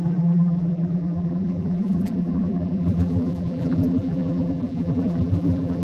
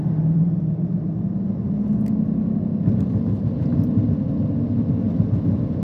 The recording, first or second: second